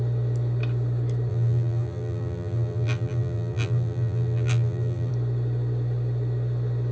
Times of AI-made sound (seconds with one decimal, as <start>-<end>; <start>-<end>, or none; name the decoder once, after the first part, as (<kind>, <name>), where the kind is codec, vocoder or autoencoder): 1.3-5.1 (vocoder, BigVGAN v2)